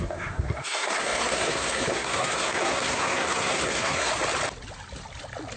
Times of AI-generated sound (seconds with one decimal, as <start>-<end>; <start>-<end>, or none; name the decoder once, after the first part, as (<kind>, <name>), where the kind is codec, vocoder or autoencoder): 0.0-4.1 (codec, SNAC)